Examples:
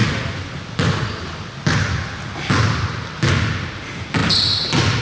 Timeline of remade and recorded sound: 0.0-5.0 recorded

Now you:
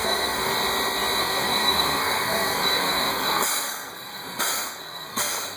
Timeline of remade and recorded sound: 0.0-0.5 remade; 0.5-1.2 recorded; 1.2-5.6 remade

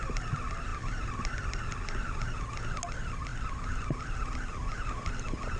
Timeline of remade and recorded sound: 0.0-5.6 recorded

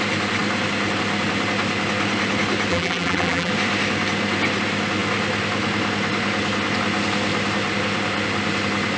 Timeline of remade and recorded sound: 0.0-2.7 recorded; 2.7-3.5 remade; 3.5-9.0 recorded

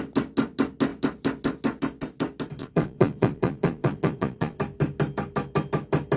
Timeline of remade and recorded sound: 0.0-2.6 recorded; 2.6-4.6 remade; 4.6-6.2 recorded

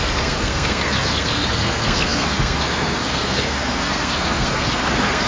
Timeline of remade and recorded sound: 0.0-5.3 remade

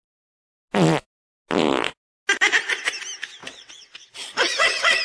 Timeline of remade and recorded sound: 0.0-3.4 recorded; 3.4-5.0 remade

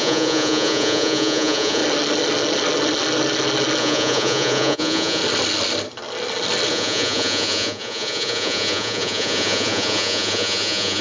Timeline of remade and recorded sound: 0.0-1.8 remade; 1.8-3.8 recorded; 3.8-5.2 remade; 5.2-6.7 recorded; 6.7-11.0 remade